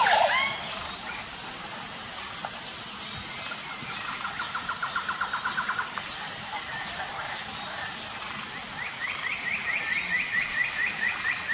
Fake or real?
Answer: real